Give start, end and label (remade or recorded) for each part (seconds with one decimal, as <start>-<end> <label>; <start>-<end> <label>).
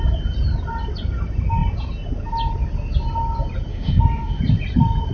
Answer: 0.0-3.7 recorded; 3.7-4.4 remade; 4.4-5.1 recorded